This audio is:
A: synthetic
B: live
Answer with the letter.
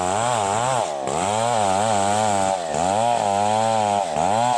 B